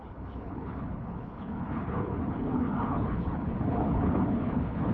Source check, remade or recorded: remade